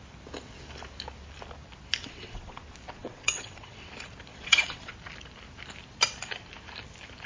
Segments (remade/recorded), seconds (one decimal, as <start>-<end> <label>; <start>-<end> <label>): 0.0-2.0 recorded; 2.0-2.6 remade; 2.6-3.0 recorded; 3.0-3.9 remade; 3.9-4.3 recorded; 4.3-4.9 remade; 4.9-7.3 recorded